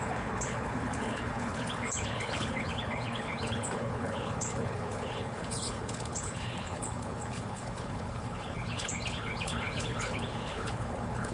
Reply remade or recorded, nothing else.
remade